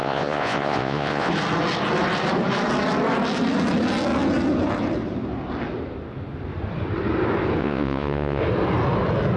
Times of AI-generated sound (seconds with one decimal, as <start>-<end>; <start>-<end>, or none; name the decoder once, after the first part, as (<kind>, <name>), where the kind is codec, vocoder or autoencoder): 0.0-1.3 (vocoder, Vocos); 7.6-8.4